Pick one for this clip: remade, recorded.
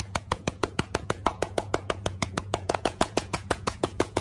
remade